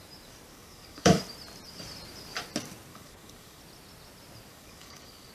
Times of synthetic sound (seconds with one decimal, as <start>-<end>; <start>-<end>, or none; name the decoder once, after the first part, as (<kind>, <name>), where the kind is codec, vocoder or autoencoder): 0.5-1.2 (codec, DAC); 2.9-3.6; 4.5-5.3